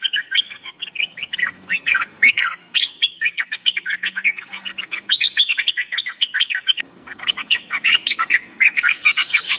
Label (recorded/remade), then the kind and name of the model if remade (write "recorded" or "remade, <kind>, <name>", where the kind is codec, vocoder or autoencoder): remade, codec, SNAC